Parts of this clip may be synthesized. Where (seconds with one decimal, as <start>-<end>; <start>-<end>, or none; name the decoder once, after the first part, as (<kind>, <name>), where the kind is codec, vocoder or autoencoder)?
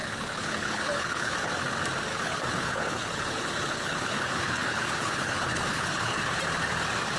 0.0-1.5 (codec, HILCodec); 2.1-6.4